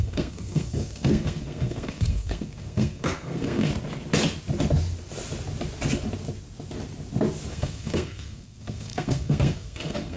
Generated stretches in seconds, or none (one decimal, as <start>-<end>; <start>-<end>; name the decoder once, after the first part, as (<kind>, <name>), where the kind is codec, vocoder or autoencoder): 0.0-3.7 (codec, SNAC); 7.5-10.2